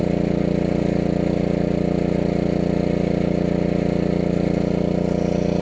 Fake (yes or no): no